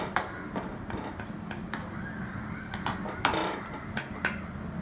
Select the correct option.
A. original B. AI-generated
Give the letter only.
A